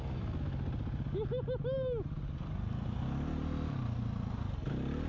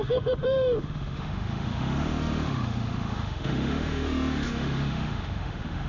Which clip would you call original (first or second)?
first